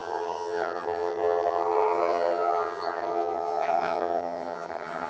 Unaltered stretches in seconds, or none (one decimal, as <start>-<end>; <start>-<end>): none